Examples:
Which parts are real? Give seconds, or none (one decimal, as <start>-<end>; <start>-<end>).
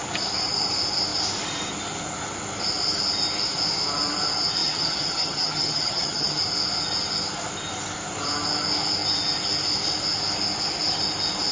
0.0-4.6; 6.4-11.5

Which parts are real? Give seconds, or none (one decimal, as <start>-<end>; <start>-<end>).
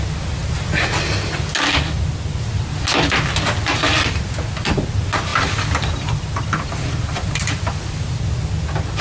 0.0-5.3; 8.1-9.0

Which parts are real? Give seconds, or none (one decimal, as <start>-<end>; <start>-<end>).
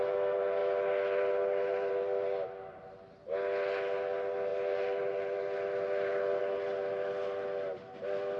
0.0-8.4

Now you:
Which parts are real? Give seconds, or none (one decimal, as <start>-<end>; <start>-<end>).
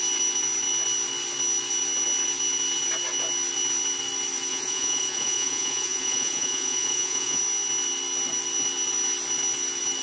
0.0-4.5; 7.4-10.0